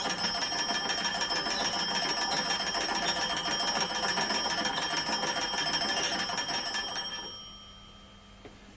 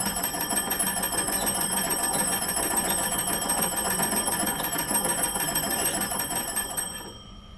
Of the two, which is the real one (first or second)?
first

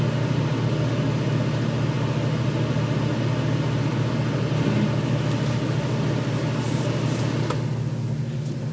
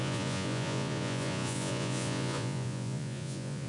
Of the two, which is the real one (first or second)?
first